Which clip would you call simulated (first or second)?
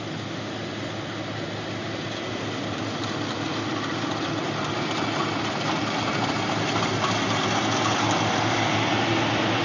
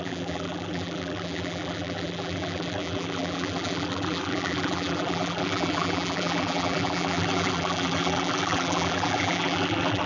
second